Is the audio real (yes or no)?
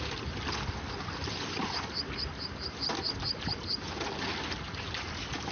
yes